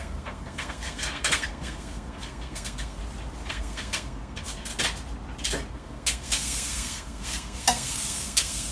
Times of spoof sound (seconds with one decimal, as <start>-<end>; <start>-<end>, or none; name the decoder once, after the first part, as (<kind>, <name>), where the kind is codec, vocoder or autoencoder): 0.0-3.0 (codec, SNAC); 3.5-4.7; 5.7-8.7